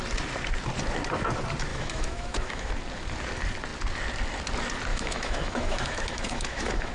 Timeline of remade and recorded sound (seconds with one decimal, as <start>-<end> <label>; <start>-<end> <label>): 0.0-1.7 recorded; 1.7-2.7 remade; 2.7-4.9 recorded; 4.9-6.9 remade